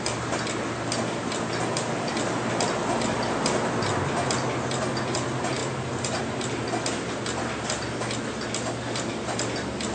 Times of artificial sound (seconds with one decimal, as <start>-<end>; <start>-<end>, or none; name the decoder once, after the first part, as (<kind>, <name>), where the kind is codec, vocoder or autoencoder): none

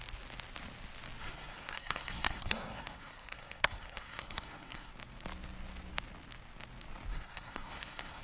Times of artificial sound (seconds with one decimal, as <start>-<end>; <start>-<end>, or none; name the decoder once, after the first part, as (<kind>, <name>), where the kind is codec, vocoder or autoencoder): 1.2-4.9 (codec, SNAC); 7.1-8.2

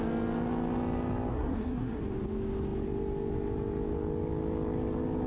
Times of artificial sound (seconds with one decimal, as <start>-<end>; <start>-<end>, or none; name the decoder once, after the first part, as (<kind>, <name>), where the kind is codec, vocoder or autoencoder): 1.3-2.0 (codec, SNAC)

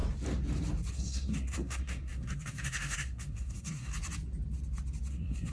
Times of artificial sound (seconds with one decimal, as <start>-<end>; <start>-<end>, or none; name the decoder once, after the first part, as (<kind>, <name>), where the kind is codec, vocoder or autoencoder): 0.9-3.9 (codec, SNAC); 5.1-5.5

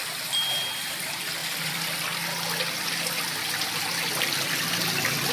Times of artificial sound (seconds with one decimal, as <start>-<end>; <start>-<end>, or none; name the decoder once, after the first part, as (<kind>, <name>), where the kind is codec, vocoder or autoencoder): none

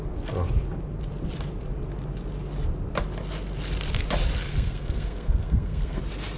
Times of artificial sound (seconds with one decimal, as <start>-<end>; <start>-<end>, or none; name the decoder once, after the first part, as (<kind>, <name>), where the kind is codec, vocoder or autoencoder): 4.5-6.0 (codec, SNAC)

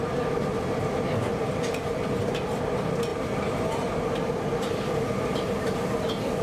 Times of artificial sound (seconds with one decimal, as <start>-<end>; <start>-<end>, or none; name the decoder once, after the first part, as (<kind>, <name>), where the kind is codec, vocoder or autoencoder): none

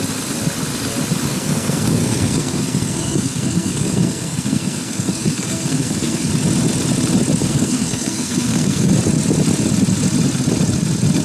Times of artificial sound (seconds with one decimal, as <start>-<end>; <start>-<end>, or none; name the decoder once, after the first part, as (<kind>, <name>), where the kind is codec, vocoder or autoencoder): 1.3-6.3 (codec, SNAC); 7.4-8.9